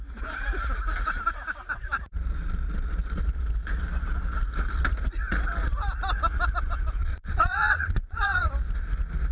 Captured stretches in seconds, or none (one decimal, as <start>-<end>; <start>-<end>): 0.0-7.0; 8.5-9.3

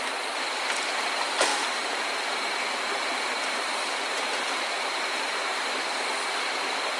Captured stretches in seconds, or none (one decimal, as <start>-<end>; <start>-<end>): 0.0-1.5; 5.7-7.0

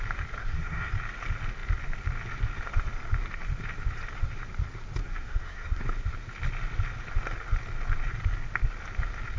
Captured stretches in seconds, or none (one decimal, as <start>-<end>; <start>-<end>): 0.0-0.4; 0.9-5.0; 5.8-9.4

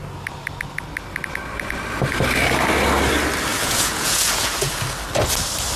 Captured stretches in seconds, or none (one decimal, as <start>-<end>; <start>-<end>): 0.0-3.5; 4.7-5.8